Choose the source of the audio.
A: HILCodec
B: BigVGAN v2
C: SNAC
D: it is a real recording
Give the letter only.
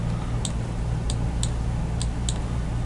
D